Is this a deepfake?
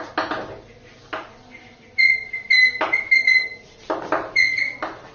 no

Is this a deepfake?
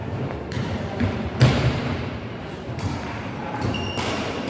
yes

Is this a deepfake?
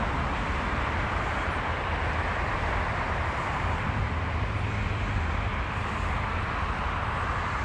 no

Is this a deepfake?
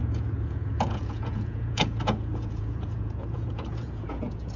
yes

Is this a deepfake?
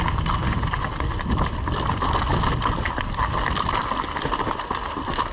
yes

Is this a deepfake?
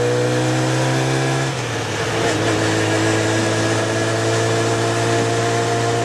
no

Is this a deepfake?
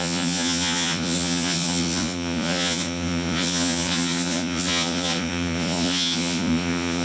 yes